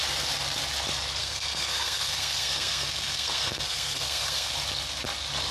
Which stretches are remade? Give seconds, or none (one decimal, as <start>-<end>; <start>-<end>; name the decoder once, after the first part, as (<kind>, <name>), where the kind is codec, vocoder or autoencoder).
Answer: 1.2-4.5 (codec, SNAC)